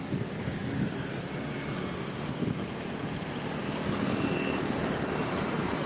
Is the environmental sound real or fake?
real